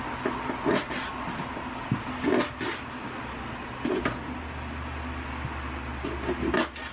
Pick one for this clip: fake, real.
real